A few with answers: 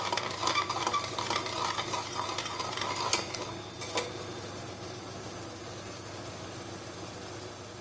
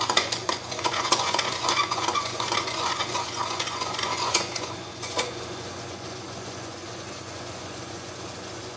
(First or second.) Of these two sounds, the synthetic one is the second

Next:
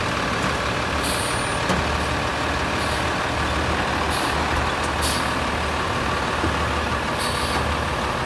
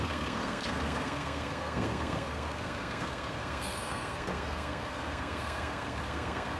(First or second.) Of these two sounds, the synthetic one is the second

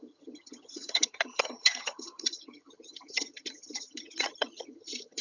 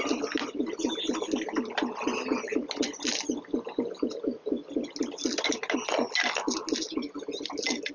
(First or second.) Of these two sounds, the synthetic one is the first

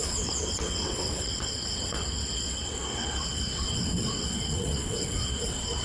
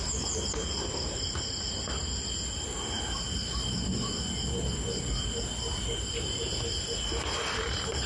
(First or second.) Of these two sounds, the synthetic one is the first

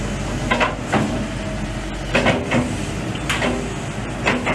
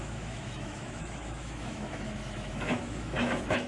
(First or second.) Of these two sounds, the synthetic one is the second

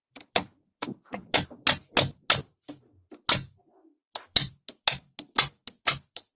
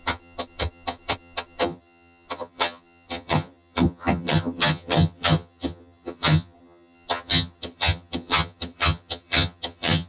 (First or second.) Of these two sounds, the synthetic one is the second